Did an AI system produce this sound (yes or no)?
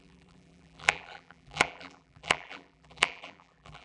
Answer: yes